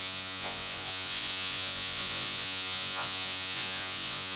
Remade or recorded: remade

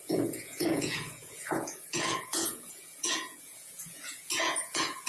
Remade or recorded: remade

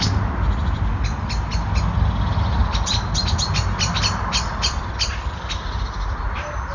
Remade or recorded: recorded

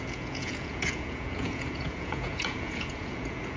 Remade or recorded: remade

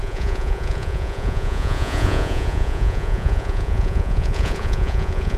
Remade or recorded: remade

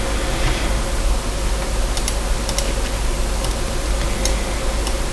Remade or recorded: recorded